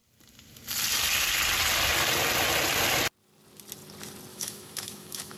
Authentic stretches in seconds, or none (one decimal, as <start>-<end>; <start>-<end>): 0.0-4.3